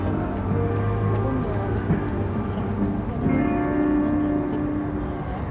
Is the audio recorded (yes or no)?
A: yes